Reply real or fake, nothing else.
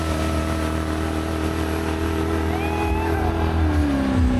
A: real